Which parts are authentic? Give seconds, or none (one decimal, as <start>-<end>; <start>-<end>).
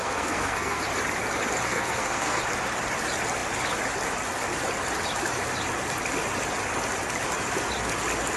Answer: 0.8-1.7; 2.4-8.4